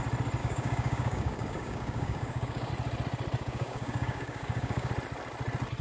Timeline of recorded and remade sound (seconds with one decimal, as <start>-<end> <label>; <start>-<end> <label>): 0.0-0.4 recorded; 0.4-2.7 remade; 2.7-3.4 recorded; 3.4-4.9 remade; 4.9-5.8 recorded